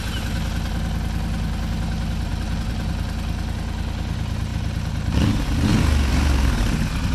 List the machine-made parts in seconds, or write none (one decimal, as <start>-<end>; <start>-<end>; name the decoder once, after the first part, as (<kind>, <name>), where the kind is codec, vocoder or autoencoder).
none